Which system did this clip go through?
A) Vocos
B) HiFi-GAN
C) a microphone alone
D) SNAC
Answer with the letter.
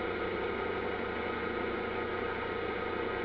A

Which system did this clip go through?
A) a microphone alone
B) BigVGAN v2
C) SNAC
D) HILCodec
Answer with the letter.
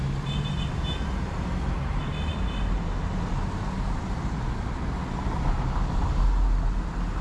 A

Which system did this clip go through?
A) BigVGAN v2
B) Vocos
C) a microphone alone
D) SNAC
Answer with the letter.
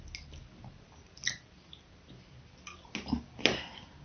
C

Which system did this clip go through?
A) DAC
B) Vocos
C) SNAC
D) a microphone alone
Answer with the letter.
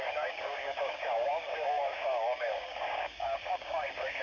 A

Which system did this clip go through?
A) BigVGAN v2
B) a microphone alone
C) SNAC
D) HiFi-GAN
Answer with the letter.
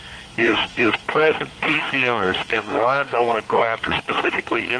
C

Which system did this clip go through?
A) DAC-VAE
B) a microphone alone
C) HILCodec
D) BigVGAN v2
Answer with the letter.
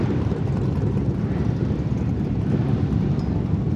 D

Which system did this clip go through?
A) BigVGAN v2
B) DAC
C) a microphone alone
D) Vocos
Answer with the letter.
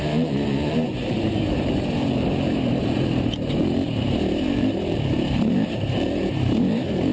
A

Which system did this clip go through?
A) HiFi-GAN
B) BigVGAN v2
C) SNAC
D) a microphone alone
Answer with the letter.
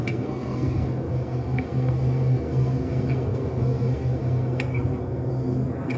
C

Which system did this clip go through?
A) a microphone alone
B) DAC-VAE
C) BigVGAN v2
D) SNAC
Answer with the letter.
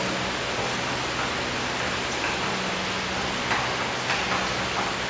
A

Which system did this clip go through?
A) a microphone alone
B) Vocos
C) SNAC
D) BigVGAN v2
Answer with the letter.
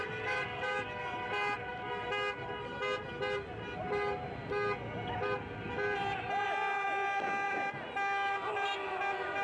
A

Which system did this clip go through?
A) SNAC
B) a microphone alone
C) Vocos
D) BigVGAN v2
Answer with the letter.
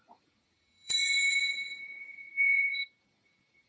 C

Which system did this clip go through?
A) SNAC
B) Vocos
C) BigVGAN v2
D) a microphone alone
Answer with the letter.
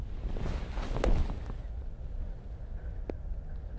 D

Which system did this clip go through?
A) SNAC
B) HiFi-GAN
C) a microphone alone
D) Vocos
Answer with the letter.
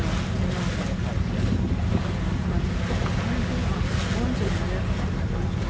C